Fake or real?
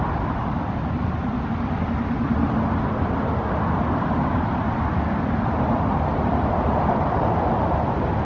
real